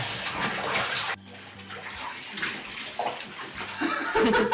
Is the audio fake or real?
real